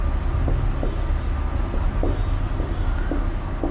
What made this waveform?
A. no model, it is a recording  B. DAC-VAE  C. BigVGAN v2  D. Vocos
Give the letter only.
A